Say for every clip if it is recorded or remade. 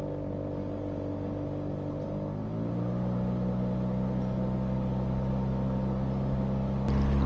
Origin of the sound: recorded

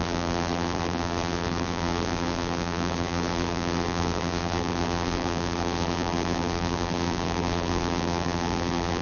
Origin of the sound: remade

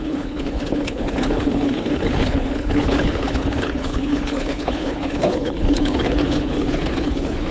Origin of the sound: remade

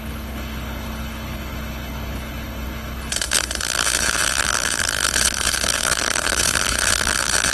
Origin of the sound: remade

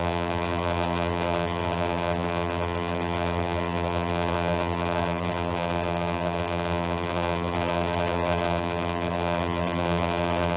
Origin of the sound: remade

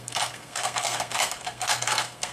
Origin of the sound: remade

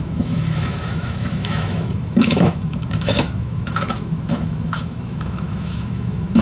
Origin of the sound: remade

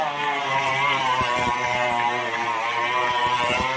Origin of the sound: recorded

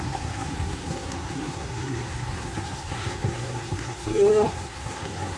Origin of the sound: remade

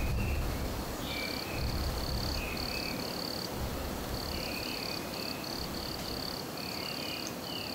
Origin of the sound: recorded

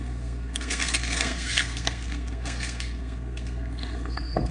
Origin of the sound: remade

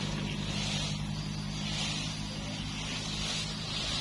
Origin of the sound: recorded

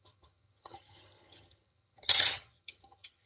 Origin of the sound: remade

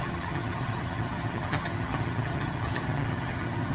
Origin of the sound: remade